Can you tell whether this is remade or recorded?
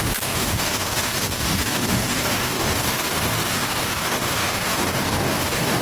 remade